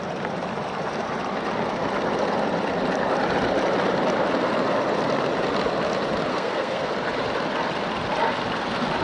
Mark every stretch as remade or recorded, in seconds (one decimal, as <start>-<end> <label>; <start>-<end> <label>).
0.0-6.3 recorded; 6.3-6.9 remade; 6.9-9.0 recorded